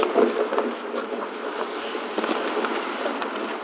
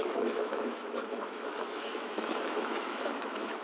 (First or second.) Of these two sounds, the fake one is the second